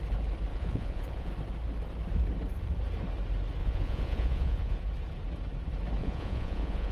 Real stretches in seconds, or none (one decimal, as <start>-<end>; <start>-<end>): 0.0-0.5; 1.3-3.6; 4.8-6.0